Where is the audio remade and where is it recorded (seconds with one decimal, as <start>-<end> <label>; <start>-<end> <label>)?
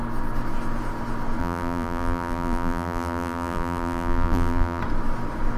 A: 0.0-1.4 recorded; 1.4-4.8 remade; 4.8-5.6 recorded